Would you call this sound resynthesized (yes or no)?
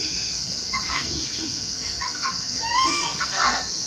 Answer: yes